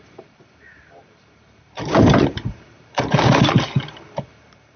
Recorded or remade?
remade